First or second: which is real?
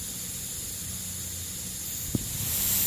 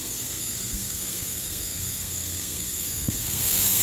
first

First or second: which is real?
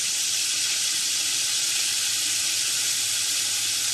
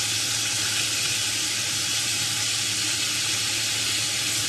second